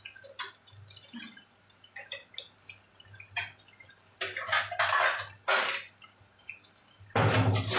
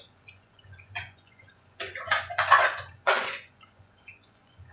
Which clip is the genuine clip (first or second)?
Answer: first